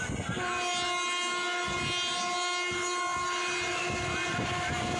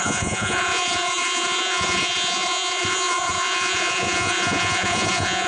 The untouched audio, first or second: first